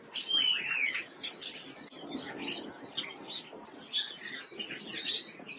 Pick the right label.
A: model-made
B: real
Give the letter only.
B